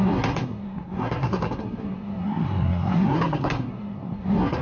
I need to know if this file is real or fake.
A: fake